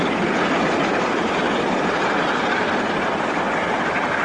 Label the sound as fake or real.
real